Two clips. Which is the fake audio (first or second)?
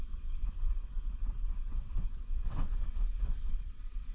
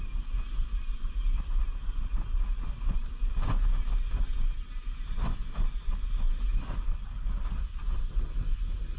first